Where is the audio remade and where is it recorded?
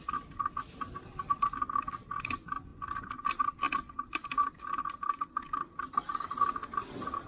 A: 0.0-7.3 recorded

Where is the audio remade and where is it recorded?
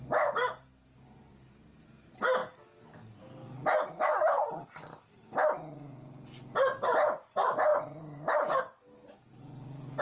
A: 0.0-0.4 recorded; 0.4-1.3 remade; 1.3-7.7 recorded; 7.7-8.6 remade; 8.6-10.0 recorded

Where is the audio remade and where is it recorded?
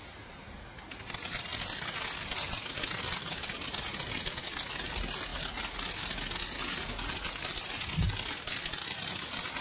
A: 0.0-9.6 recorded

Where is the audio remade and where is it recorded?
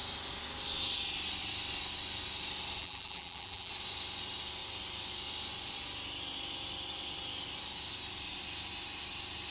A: 0.0-2.8 recorded; 2.8-3.7 remade; 3.7-9.5 recorded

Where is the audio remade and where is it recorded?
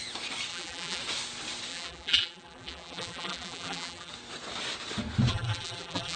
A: 0.0-0.5 recorded; 0.5-1.0 remade; 1.0-1.7 recorded; 1.7-4.1 remade; 4.1-5.3 recorded; 5.3-6.2 remade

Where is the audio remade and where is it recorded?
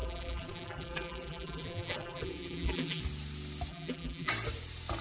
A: 0.0-3.0 remade; 3.0-3.7 recorded; 3.7-4.3 remade; 4.3-5.0 recorded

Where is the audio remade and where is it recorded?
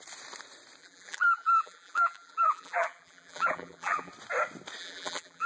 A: 0.0-0.8 recorded; 0.8-4.1 remade; 4.1-4.8 recorded; 4.8-5.5 remade